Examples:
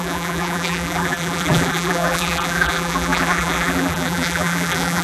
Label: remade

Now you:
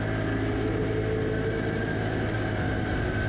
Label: recorded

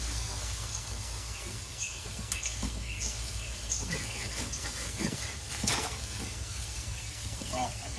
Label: remade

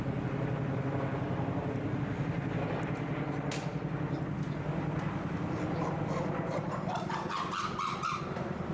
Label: recorded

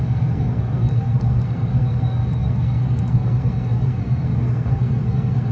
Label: remade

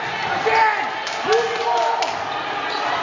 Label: recorded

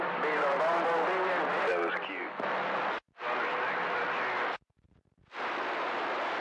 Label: recorded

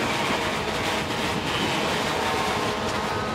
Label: recorded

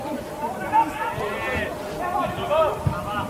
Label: recorded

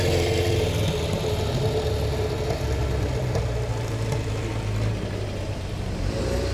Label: recorded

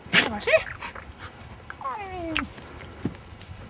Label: recorded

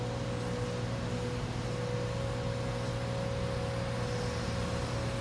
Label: recorded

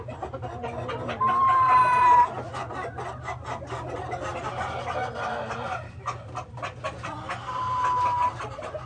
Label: recorded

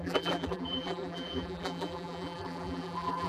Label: remade